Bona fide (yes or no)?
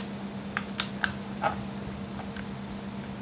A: yes